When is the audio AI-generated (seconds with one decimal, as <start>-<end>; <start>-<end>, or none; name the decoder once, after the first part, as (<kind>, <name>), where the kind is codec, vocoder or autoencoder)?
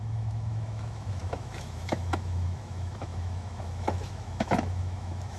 0.0-5.4 (autoencoder, DAC-VAE)